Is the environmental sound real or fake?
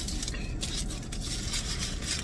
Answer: real